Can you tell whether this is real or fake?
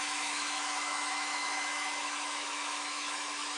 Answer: fake